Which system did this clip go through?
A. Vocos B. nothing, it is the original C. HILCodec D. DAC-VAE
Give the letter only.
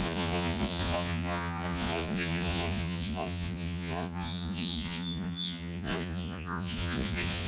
A